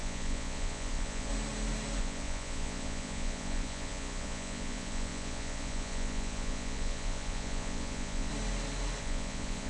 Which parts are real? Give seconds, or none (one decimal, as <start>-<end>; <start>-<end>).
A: 1.3-2.0; 8.3-9.0